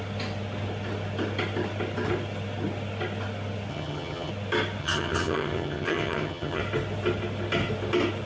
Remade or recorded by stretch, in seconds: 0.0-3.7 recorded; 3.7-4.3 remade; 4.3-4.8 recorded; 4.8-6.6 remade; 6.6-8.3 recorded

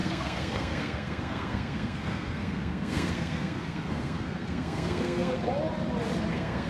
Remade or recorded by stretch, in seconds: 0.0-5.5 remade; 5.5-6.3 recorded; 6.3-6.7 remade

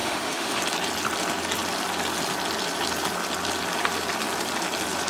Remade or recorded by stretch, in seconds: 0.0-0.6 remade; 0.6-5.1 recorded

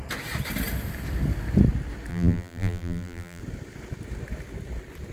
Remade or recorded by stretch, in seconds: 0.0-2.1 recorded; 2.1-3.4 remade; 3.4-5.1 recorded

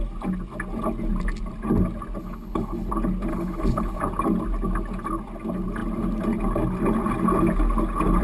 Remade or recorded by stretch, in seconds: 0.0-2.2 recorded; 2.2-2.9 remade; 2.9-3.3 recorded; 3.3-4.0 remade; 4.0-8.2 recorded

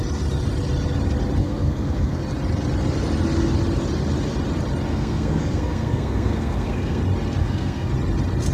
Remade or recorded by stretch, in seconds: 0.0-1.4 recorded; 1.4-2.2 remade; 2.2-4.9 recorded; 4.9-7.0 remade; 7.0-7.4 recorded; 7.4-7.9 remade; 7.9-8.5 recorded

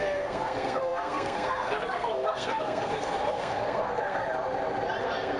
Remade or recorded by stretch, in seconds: 0.0-4.2 remade; 4.2-5.0 recorded; 5.0-5.4 remade